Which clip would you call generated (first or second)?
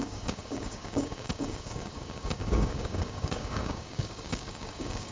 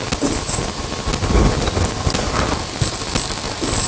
first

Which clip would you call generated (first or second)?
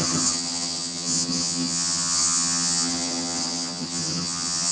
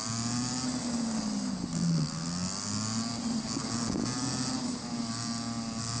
first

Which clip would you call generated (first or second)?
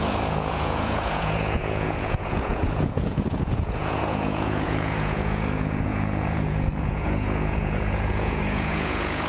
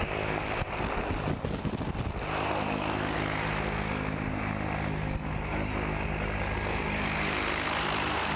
first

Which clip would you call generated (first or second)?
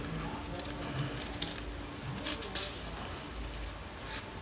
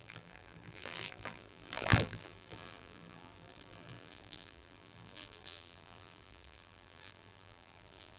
second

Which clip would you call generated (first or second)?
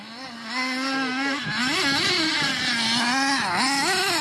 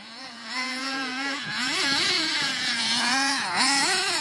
second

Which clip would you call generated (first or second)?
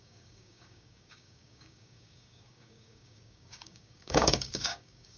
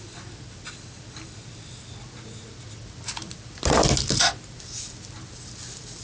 first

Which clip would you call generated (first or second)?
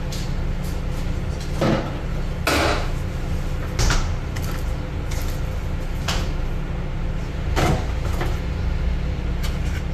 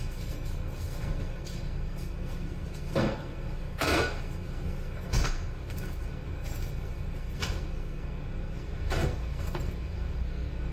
second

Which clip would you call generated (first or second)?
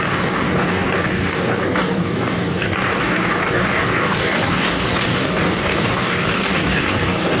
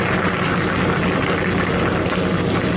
first